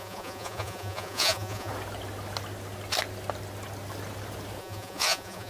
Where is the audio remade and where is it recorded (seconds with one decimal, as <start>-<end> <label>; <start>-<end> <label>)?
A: 0.0-1.7 remade; 1.7-4.6 recorded; 4.6-5.5 remade